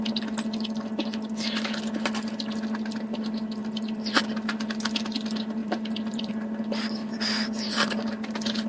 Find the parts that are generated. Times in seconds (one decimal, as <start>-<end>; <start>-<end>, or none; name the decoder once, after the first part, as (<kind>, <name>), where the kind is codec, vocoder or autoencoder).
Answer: 3.6-4.2 (vocoder, BigVGAN v2); 5.6-6.3; 7.0-8.1